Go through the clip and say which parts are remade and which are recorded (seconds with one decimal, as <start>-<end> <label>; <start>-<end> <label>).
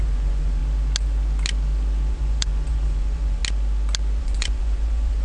0.0-0.6 remade; 0.6-2.1 recorded; 2.1-3.4 remade; 3.4-4.2 recorded; 4.2-5.2 remade